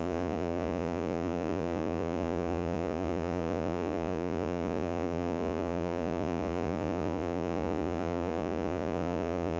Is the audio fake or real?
fake